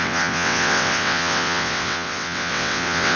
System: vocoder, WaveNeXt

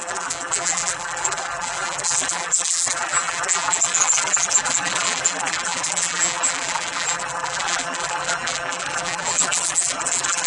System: vocoder, BigVGAN v2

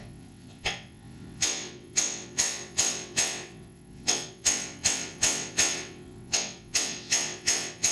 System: vocoder, WaveNeXt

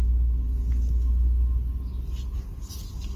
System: none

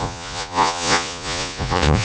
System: vocoder, Vocos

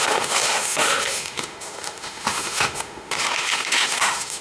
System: autoencoder, DAC-VAE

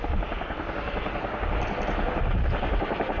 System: none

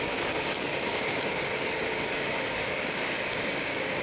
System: codec, DAC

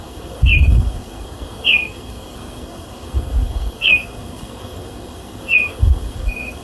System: codec, SNAC